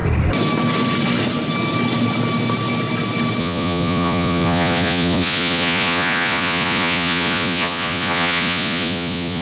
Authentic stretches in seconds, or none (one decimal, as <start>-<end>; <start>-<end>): 0.0-3.4